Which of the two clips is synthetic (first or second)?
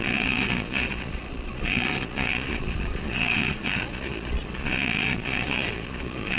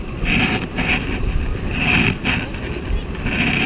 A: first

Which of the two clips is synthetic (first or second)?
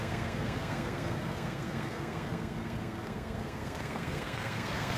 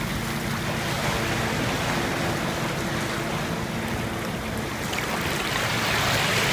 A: first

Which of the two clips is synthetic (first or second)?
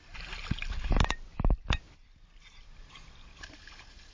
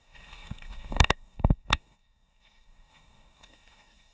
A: second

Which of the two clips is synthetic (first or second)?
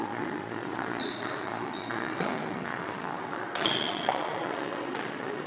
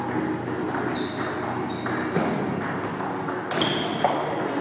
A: first